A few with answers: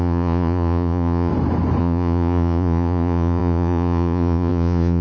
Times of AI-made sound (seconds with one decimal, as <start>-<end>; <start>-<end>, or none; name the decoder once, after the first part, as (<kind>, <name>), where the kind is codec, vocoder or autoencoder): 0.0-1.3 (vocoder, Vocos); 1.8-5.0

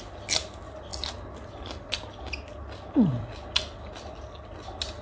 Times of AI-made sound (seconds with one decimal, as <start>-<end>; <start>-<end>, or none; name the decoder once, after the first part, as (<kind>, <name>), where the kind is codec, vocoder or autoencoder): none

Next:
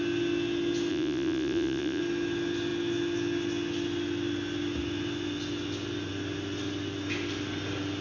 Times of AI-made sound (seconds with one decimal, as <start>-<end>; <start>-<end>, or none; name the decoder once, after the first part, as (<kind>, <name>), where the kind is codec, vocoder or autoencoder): 0.9-2.0 (vocoder, Vocos)

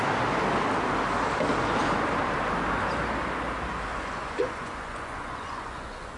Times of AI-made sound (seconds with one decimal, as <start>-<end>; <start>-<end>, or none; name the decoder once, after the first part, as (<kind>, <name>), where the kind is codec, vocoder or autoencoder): 3.9-6.2 (vocoder, Vocos)

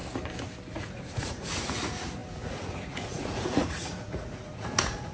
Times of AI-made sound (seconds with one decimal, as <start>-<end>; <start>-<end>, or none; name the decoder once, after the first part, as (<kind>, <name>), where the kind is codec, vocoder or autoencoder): 0.7-5.1 (vocoder, Vocos)

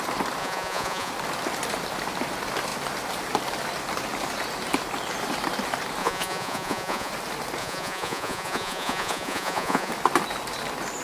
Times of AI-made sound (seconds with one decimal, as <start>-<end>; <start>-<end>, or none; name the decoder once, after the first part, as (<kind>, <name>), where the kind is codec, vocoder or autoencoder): 0.4-1.1 (vocoder, Vocos); 6.0-7.1; 7.6-9.9

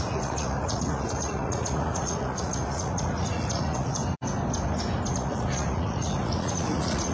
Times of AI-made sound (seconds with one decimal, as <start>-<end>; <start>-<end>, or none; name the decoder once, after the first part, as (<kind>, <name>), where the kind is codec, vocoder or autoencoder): 0.0-4.0 (vocoder, Vocos); 5.1-7.1